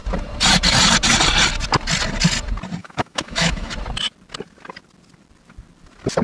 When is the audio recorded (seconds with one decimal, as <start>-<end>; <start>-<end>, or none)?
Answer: 0.0-2.8; 3.7-6.2